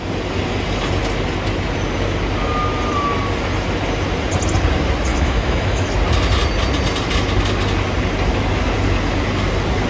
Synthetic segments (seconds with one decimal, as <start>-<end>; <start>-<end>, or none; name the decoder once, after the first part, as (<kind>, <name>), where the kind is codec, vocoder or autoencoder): 5.1-5.9 (autoencoder, DAC-VAE)

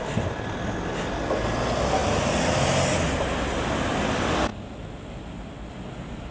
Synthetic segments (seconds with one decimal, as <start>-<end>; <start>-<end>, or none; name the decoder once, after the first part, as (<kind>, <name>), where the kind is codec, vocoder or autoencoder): none

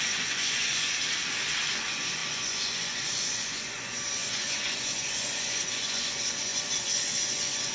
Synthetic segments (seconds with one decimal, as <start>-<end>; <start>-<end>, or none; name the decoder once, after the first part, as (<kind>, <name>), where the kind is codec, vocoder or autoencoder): 0.0-1.0 (vocoder, Vocos); 1.7-7.7

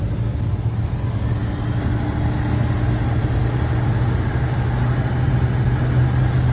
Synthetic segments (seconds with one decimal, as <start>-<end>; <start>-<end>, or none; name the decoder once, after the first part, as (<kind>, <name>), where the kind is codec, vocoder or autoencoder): none

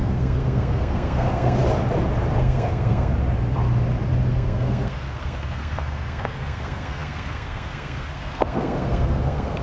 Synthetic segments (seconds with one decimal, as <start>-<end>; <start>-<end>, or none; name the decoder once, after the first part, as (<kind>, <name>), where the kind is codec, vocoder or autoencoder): 0.0-1.6 (codec, SNAC); 2.4-3.1; 4.3-9.6

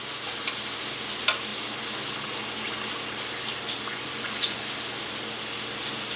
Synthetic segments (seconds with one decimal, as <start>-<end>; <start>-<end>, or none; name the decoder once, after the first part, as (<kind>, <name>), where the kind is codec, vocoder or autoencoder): 3.9-4.6 (vocoder, Vocos)